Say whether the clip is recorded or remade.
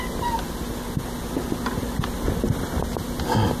recorded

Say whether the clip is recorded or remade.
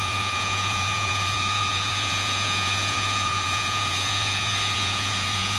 remade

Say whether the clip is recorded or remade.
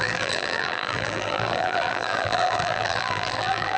remade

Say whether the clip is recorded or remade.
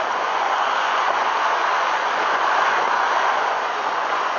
remade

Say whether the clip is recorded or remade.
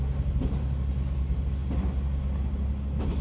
recorded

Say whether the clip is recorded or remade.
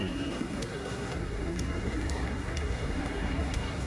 remade